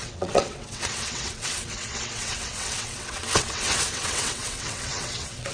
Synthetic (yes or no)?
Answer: yes